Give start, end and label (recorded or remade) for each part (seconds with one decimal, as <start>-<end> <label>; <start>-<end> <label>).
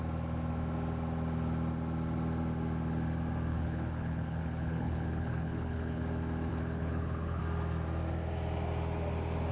0.0-3.5 recorded; 3.5-6.0 remade; 6.0-6.5 recorded; 6.5-7.4 remade; 7.4-9.5 recorded